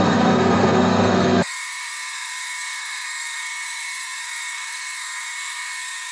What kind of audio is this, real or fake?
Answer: fake